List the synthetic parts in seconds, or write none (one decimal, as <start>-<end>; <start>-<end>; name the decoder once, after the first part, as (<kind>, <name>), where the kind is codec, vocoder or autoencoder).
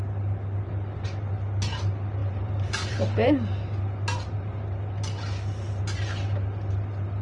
2.2-3.3 (vocoder, BigVGAN v2)